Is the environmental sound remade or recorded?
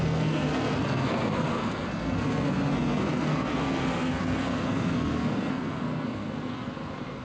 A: remade